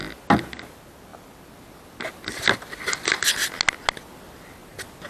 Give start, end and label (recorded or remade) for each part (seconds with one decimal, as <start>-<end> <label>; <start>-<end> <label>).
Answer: 0.0-5.1 recorded